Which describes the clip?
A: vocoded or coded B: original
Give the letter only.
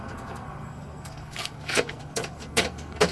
A